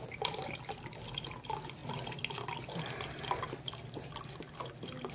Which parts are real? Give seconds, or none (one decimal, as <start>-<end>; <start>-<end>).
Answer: 0.0-5.1